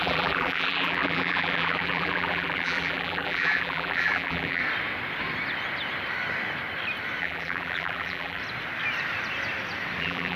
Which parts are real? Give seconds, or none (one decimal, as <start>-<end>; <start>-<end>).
4.6-7.2; 8.4-10.0